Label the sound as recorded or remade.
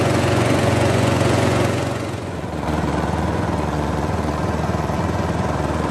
remade